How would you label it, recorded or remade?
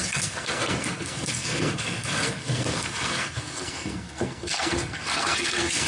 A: remade